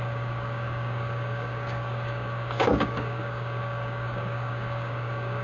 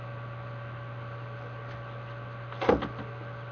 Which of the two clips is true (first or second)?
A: second